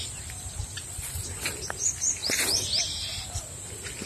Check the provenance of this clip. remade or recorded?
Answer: recorded